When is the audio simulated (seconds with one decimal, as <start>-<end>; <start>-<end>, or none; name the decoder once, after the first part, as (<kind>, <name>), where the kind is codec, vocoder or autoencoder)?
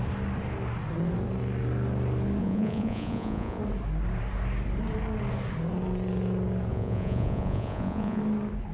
2.4-3.6 (vocoder, Vocos); 6.7-8.2